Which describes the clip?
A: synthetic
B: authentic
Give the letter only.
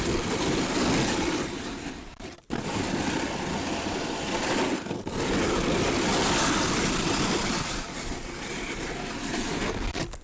B